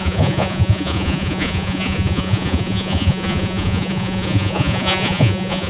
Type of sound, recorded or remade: remade